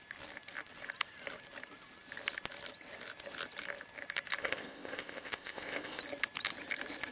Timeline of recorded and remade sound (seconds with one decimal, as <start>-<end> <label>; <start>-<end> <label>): 0.0-4.4 recorded; 4.4-6.0 remade; 6.0-7.1 recorded